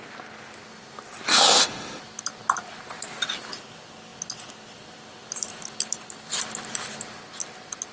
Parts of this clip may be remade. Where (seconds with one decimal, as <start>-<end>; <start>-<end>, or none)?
1.3-2.0